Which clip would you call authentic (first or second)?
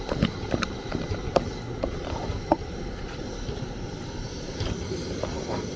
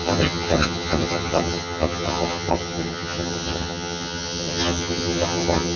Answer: first